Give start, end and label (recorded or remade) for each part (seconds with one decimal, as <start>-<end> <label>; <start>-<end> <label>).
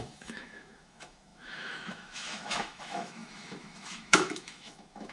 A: 0.0-5.1 remade